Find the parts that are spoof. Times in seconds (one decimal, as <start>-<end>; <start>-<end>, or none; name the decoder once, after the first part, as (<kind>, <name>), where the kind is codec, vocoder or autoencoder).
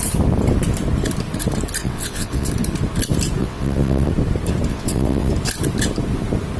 1.8-2.5 (vocoder, WaveNeXt); 3.4-4.1; 4.7-5.3